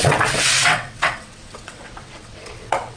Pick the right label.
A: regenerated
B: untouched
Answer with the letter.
A